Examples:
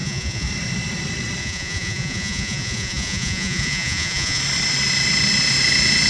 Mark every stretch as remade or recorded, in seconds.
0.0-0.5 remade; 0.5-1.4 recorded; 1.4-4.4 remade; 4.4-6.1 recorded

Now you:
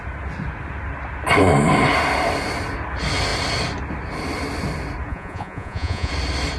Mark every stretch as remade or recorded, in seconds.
0.0-5.1 recorded; 5.1-6.1 remade; 6.1-6.6 recorded

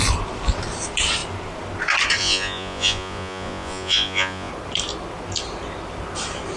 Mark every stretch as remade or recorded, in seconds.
0.0-2.2 recorded; 2.2-4.5 remade; 4.5-6.6 recorded

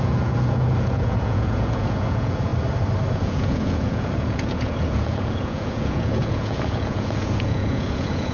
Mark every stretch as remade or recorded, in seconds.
0.0-2.5 remade; 2.5-3.1 recorded; 3.1-8.3 remade

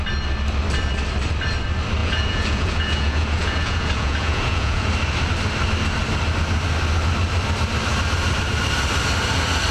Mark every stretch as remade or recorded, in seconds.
0.0-2.0 recorded; 2.0-4.9 remade; 4.9-9.7 recorded

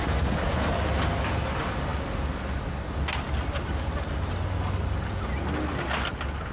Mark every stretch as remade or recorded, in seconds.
0.0-6.5 recorded

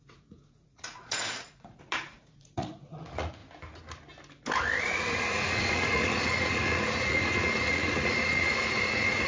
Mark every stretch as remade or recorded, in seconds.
0.0-3.4 remade; 3.4-4.8 recorded; 4.8-9.3 remade